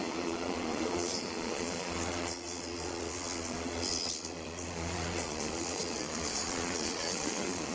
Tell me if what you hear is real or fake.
fake